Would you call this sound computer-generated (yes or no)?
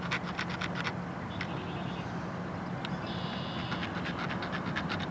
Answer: no